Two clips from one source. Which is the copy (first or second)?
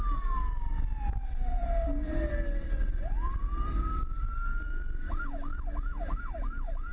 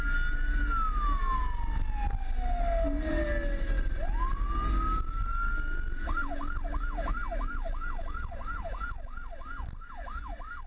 first